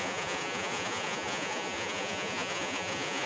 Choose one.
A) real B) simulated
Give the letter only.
B